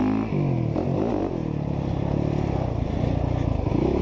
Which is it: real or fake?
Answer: real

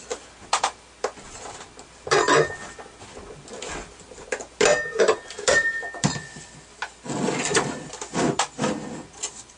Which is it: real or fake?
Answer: real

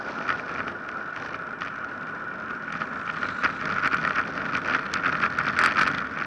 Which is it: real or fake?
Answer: real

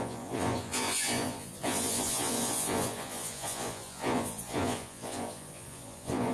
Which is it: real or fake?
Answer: fake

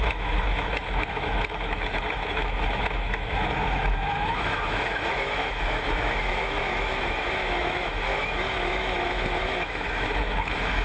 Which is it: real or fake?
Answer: fake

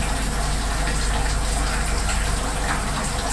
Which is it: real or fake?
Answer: real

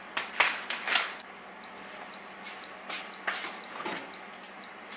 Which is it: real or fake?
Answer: real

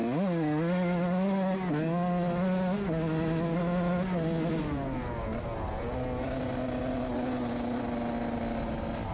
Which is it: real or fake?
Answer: real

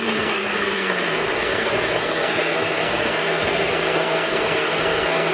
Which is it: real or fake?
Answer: fake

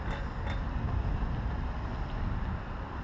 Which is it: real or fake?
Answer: real